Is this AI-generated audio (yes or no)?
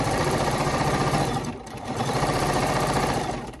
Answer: yes